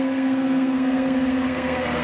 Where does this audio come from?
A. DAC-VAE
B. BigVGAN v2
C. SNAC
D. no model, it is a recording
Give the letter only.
C